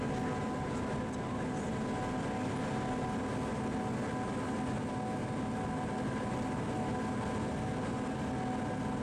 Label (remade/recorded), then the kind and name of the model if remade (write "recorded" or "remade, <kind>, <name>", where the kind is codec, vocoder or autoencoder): recorded